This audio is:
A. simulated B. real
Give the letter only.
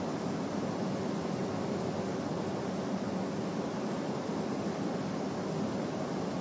B